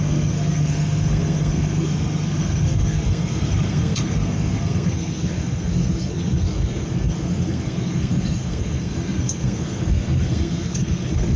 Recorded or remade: remade